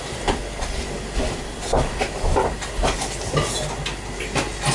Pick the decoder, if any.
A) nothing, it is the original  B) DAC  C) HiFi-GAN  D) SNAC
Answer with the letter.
A